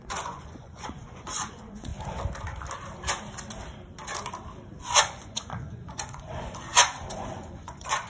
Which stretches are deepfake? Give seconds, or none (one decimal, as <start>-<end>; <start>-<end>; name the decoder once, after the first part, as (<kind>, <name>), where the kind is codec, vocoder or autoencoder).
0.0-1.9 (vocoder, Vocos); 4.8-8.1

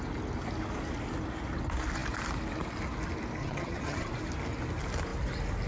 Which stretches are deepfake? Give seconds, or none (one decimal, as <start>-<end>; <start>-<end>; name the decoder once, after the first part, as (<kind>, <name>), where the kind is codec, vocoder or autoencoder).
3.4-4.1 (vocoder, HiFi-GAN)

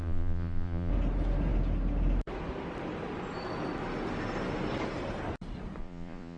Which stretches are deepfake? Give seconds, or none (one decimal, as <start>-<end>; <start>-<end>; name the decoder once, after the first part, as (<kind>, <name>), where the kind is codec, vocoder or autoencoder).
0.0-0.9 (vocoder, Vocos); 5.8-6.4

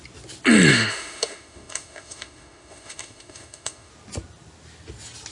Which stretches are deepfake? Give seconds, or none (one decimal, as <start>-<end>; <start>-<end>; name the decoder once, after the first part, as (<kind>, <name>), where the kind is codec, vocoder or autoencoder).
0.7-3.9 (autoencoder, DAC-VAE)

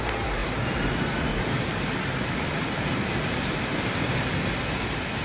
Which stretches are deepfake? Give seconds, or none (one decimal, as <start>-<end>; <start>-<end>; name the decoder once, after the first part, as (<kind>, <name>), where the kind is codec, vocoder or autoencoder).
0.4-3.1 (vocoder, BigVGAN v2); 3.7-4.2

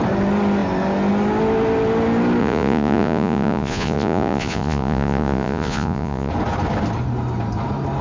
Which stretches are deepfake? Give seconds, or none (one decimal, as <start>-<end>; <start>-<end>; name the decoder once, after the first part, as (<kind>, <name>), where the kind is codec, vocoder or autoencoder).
2.4-6.3 (vocoder, Vocos)

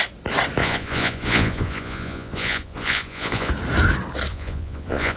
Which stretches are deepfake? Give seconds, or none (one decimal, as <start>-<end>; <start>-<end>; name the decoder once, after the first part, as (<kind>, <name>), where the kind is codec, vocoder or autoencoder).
0.6-3.5 (vocoder, Vocos); 4.3-5.2